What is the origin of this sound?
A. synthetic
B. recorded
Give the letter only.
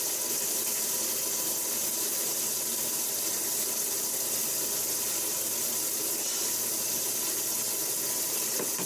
B